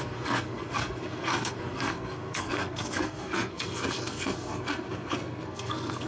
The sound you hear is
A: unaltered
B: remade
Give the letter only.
B